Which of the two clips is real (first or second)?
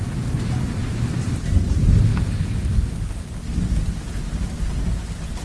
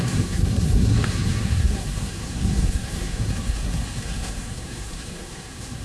first